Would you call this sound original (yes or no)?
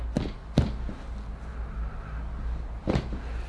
yes